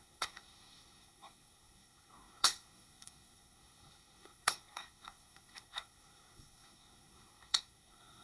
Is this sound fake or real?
fake